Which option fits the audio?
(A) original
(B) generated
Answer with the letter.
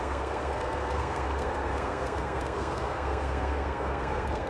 B